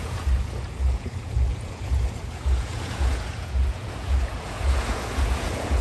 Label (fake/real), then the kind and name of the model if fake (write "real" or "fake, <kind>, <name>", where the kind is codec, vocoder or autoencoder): fake, vocoder, Vocos